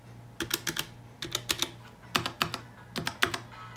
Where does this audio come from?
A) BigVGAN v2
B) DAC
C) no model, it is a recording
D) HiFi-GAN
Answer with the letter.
C